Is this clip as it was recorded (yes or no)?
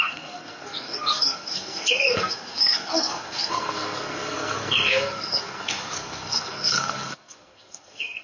no